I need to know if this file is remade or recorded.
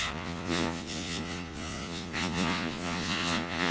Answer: remade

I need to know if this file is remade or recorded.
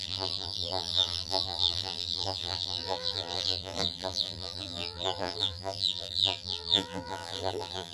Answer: remade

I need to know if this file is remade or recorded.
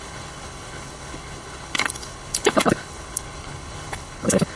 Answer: remade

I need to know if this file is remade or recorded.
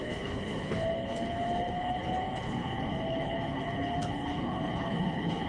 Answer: remade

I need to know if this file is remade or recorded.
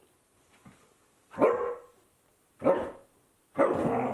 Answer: recorded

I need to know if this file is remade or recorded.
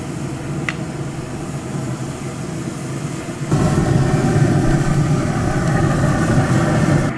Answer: recorded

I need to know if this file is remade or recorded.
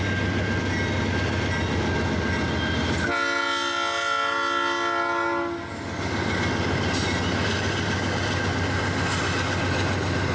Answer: recorded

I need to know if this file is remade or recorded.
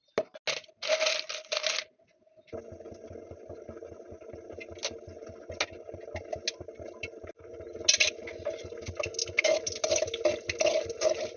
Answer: recorded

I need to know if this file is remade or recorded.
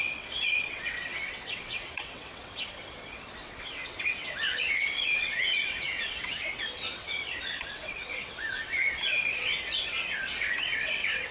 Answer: remade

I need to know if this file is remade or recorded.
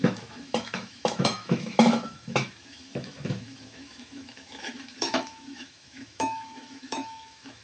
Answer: remade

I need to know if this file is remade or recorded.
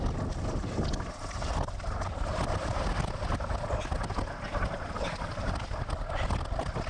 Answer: recorded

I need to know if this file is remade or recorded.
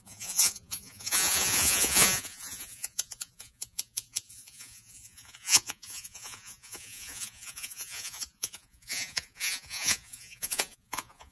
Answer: remade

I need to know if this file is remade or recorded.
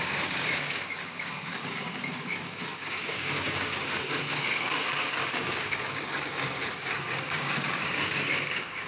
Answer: remade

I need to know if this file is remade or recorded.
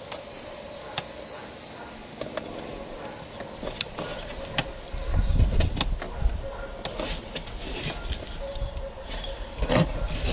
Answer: recorded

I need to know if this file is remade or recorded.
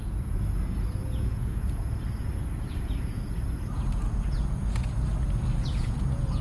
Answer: remade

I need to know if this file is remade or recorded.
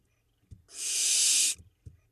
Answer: recorded